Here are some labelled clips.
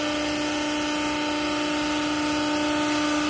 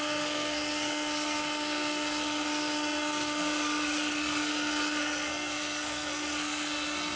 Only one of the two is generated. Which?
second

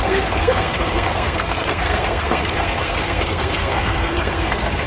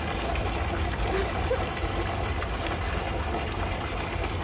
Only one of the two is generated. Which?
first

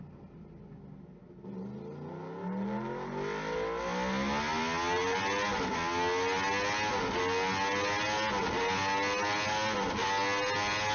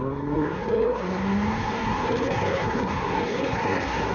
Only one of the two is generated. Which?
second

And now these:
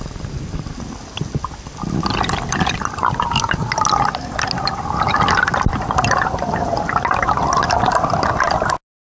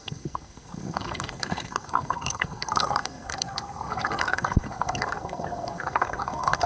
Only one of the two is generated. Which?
second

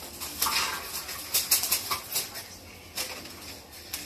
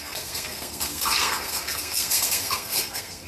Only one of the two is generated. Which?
second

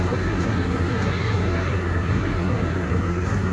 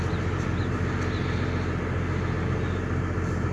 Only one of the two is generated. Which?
first